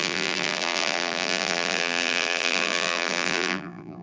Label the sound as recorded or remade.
remade